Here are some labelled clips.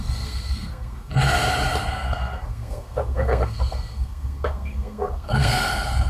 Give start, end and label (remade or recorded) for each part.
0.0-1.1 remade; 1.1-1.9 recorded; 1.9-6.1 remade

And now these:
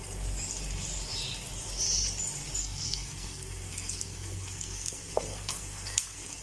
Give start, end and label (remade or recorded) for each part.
0.0-2.6 recorded; 2.6-6.4 remade

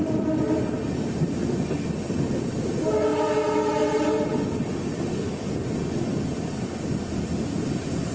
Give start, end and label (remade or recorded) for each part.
0.0-8.1 recorded

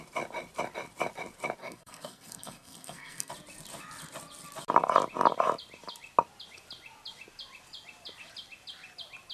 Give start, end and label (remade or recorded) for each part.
0.0-1.6 recorded; 1.6-3.3 remade; 3.3-9.3 recorded

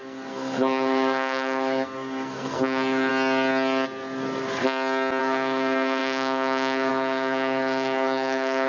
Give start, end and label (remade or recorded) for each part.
0.0-3.1 remade; 3.1-5.2 recorded; 5.2-8.7 remade

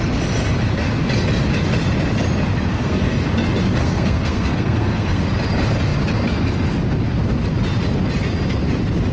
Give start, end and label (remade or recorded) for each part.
0.0-2.7 recorded; 2.7-3.2 remade; 3.2-3.8 recorded; 3.8-5.2 remade; 5.2-9.1 recorded